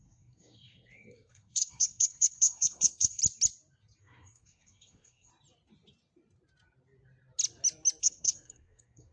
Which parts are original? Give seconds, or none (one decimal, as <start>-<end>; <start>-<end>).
3.2-4.0; 5.3-8.0